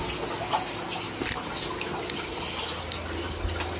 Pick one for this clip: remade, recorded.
recorded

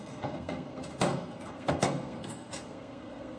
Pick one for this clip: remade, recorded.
remade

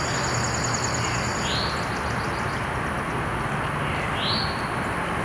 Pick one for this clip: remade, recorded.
recorded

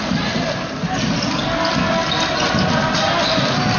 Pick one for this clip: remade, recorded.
recorded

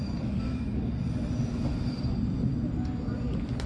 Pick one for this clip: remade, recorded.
recorded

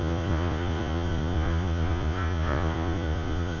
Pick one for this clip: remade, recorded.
remade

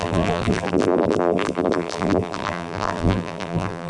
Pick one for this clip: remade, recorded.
remade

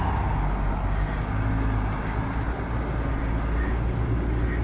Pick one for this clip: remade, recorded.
recorded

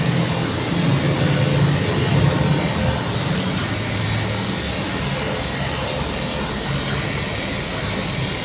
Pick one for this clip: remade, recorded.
recorded